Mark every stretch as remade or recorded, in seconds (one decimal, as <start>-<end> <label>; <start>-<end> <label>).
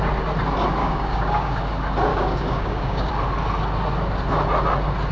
0.0-0.8 recorded; 0.8-1.6 remade; 1.6-2.1 recorded; 2.1-3.1 remade; 3.1-5.1 recorded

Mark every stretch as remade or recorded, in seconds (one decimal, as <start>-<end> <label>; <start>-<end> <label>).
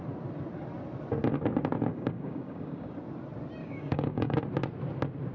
0.0-1.9 recorded; 1.9-2.9 remade; 2.9-3.6 recorded; 3.6-4.4 remade; 4.4-5.3 recorded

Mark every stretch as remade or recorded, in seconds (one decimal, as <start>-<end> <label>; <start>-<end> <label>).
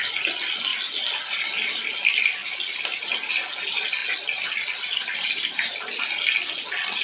0.0-7.0 recorded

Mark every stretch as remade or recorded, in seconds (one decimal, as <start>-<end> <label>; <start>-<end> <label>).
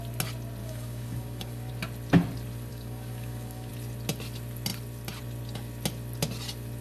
0.0-0.6 recorded; 0.6-1.7 remade; 1.7-2.7 recorded; 2.7-3.7 remade; 3.7-6.8 recorded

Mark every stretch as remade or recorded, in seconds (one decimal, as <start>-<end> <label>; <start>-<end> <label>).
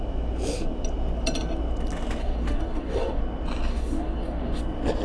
0.0-2.2 recorded; 2.2-3.2 remade; 3.2-3.7 recorded; 3.7-4.6 remade; 4.6-5.0 recorded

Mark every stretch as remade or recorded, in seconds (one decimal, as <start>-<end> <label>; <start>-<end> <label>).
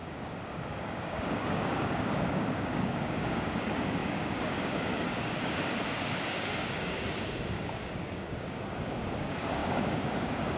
0.0-10.6 remade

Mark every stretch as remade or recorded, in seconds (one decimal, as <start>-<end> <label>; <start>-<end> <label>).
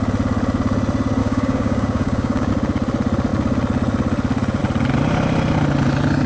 0.0-1.2 recorded; 1.2-2.5 remade; 2.5-6.3 recorded